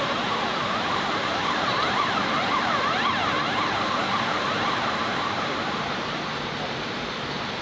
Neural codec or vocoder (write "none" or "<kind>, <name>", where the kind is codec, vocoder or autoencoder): vocoder, BigVGAN v2